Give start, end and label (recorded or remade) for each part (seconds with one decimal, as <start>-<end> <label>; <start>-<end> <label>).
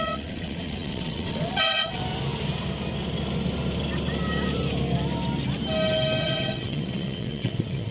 0.0-2.0 remade; 2.0-6.2 recorded; 6.2-7.9 remade